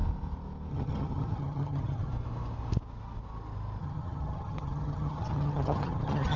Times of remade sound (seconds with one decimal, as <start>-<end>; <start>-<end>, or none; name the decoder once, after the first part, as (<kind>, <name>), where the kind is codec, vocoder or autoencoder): 0.7-2.1 (vocoder, HiFi-GAN); 3.8-6.4